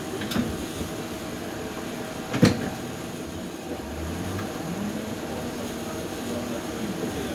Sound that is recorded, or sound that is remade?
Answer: recorded